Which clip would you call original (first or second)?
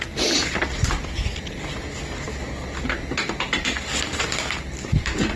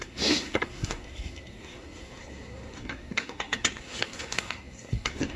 first